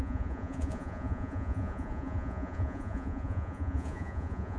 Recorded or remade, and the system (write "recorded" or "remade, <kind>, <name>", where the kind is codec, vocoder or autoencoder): remade, vocoder, Vocos